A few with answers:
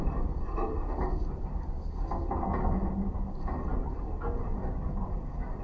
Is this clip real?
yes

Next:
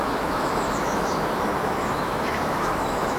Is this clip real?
no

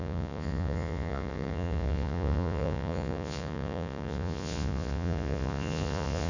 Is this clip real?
no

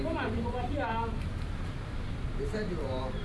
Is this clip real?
no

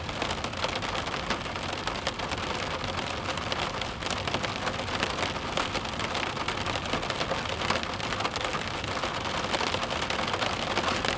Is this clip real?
yes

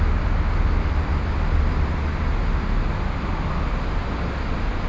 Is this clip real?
yes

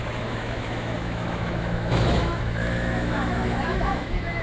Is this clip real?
no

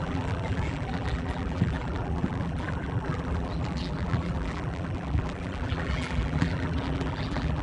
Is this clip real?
no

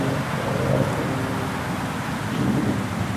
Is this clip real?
yes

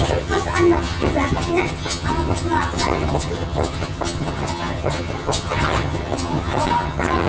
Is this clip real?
no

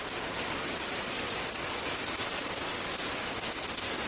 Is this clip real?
yes